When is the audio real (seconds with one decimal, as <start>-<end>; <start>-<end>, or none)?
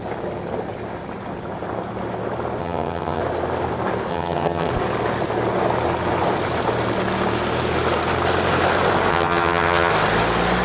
0.0-2.6; 3.2-4.1; 4.7-9.1; 9.9-10.6